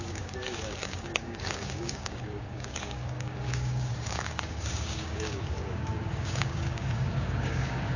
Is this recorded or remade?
remade